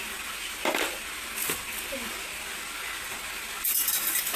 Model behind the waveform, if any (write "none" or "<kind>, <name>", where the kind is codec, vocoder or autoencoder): none